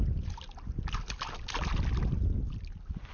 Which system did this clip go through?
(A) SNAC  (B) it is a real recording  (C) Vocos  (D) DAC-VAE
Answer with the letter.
B